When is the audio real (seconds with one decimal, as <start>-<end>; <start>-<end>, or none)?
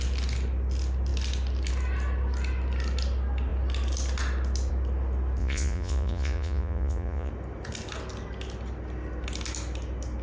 0.0-5.4; 7.3-10.2